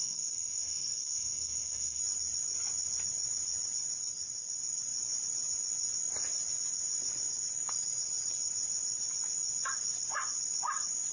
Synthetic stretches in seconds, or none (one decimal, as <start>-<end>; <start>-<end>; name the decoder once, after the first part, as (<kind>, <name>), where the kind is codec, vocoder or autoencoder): 0.0-2.0 (codec, SNAC)